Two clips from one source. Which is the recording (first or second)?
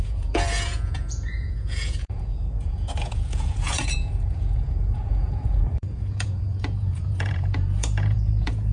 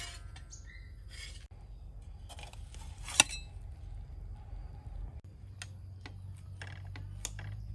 second